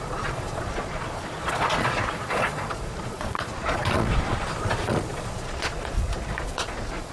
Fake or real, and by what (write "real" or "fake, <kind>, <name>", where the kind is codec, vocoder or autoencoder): fake, vocoder, Vocos